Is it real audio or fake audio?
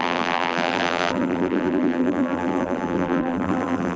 fake